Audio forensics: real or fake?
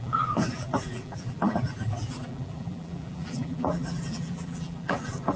fake